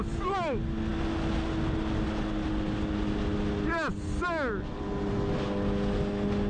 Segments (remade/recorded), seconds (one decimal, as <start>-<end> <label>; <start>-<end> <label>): 0.0-6.5 recorded